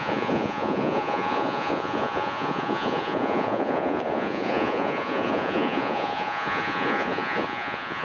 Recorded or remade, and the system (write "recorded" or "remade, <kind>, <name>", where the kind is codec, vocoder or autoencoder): remade, vocoder, Vocos